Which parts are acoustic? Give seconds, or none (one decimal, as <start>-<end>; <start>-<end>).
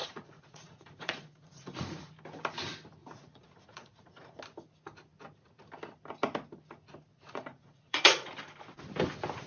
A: 2.1-3.0; 4.4-7.1; 8.3-9.5